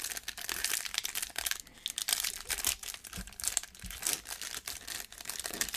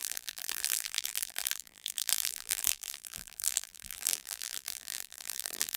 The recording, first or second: first